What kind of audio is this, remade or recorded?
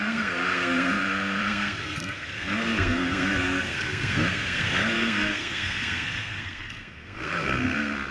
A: remade